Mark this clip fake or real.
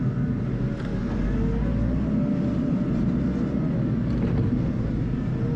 real